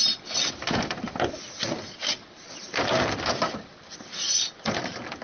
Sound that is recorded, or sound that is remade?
recorded